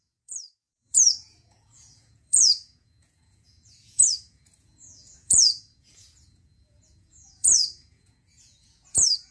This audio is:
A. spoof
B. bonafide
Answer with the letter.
A